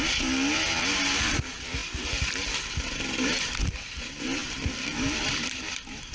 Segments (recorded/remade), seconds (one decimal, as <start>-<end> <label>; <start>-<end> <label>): 0.0-6.1 remade